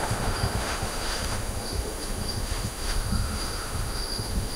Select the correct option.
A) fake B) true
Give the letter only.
A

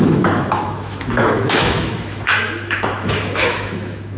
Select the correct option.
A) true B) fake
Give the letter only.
B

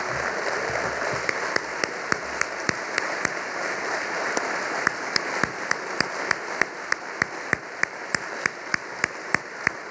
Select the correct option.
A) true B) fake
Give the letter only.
A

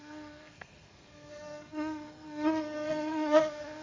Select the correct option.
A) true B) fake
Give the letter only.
B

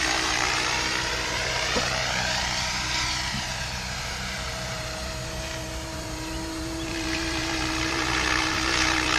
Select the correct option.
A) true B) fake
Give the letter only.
B